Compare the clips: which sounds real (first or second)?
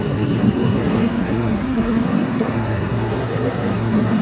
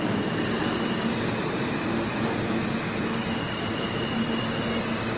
second